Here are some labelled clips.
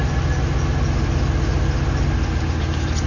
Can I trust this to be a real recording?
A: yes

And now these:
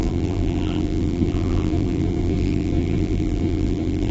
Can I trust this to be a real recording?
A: no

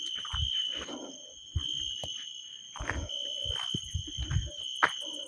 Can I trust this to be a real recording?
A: yes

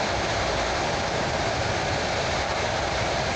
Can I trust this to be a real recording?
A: yes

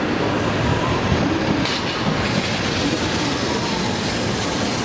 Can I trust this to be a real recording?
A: yes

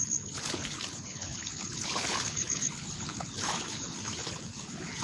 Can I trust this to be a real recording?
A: no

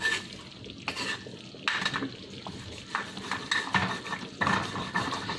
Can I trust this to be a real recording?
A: yes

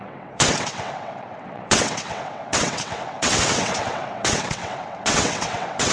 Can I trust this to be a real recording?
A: no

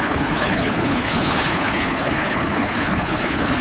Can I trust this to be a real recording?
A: no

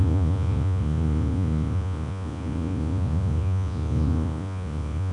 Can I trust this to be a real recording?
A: no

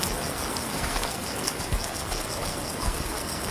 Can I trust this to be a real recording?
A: no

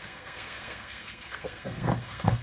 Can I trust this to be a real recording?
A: no